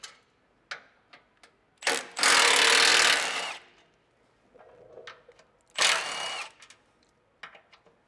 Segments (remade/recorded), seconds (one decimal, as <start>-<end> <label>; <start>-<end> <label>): 0.0-8.1 recorded